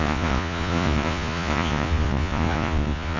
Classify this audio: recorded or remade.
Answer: remade